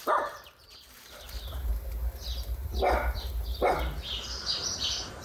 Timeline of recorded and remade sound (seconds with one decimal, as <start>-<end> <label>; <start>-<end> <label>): 0.0-1.7 remade; 1.7-4.4 recorded; 4.4-5.2 remade